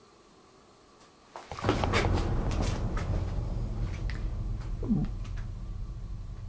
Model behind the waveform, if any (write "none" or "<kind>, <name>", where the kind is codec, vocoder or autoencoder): none